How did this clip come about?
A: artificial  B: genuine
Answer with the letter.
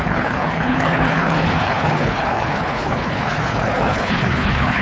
A